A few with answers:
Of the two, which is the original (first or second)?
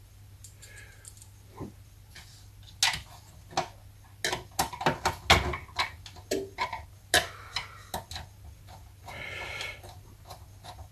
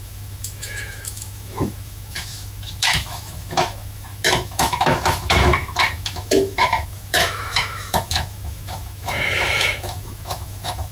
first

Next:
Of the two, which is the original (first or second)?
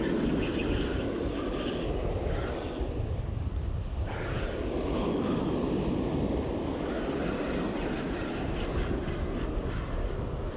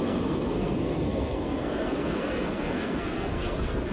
first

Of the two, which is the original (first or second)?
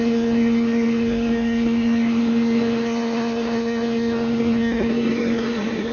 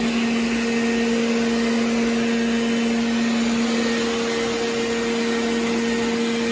second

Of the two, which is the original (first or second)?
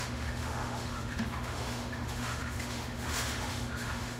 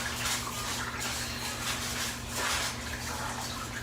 second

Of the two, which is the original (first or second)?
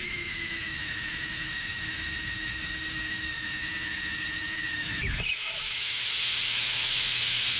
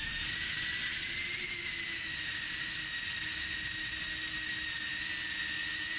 second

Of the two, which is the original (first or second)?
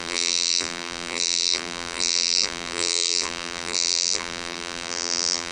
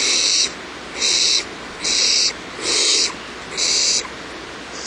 second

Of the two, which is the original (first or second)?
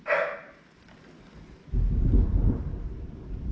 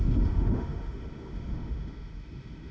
first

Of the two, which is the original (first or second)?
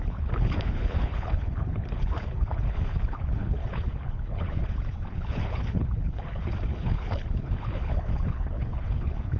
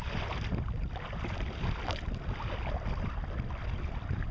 second